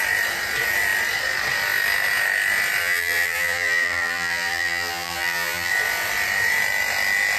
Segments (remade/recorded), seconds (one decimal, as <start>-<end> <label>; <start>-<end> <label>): 0.0-2.8 recorded; 2.8-5.7 remade; 5.7-7.4 recorded